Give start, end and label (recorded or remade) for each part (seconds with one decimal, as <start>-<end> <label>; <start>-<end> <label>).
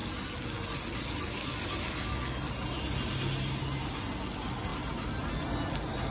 0.0-6.1 recorded